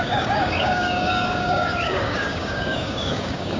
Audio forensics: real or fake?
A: fake